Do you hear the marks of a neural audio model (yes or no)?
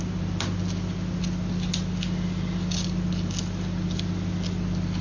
no